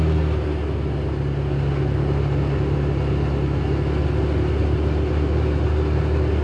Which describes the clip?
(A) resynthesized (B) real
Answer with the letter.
B